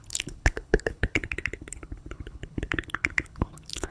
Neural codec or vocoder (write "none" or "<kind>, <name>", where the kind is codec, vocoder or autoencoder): codec, HILCodec